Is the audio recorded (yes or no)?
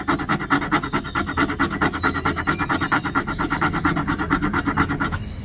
yes